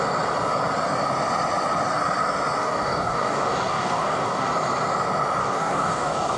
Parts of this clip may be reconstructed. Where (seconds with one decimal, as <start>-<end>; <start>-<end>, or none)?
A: 2.6-4.5; 5.4-6.4